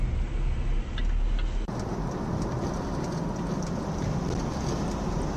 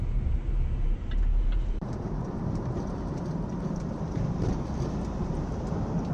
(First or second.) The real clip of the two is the first